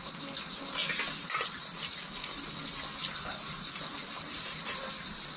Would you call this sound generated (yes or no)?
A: no